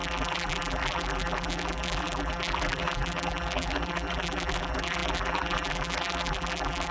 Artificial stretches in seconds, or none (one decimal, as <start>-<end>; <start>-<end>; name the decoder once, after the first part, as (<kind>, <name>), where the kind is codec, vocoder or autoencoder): 0.0-6.9 (vocoder, BigVGAN v2)